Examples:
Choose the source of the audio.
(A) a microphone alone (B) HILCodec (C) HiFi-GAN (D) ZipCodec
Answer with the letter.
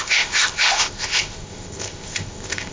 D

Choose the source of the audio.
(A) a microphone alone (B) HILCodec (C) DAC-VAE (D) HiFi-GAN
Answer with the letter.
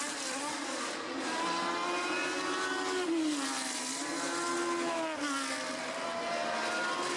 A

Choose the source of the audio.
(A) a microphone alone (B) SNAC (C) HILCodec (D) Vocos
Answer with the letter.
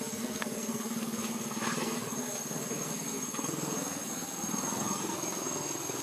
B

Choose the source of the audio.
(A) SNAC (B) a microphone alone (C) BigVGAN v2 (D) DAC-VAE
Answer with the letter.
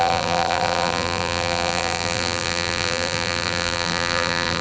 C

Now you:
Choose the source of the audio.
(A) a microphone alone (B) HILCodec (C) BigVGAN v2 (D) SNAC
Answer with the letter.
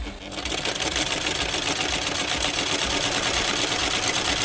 A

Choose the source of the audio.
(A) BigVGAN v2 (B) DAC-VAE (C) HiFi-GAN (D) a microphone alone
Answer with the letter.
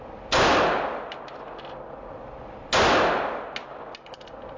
D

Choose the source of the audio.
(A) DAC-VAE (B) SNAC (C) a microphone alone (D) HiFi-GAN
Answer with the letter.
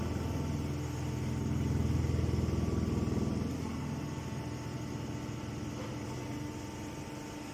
C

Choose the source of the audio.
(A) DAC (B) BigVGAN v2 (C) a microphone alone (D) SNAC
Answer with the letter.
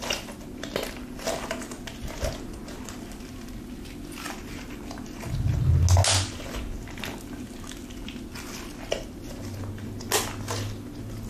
C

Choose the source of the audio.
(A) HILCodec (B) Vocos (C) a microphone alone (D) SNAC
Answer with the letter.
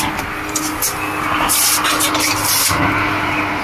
C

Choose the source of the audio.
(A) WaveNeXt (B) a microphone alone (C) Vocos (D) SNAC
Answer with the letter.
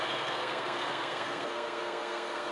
D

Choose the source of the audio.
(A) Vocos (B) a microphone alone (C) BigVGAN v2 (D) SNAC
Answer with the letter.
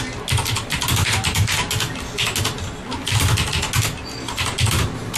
B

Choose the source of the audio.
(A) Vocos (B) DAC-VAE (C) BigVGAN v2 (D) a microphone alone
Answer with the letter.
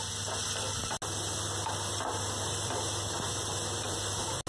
D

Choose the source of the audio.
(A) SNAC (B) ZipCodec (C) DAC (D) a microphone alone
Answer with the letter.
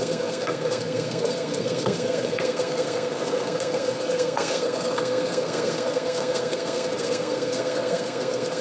A